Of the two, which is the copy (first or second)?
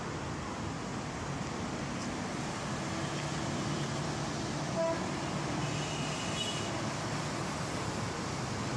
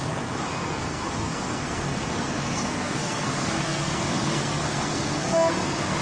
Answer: second